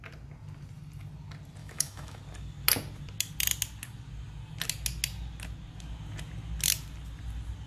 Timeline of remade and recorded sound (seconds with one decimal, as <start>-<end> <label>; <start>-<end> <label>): 0.0-1.6 recorded; 1.6-2.2 remade; 2.2-7.7 recorded